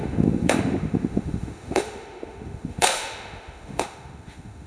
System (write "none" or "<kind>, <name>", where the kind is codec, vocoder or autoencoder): autoencoder, DAC-VAE